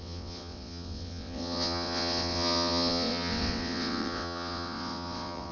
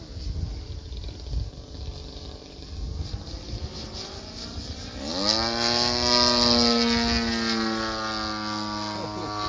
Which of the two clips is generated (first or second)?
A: first